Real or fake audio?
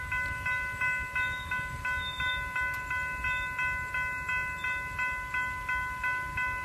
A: real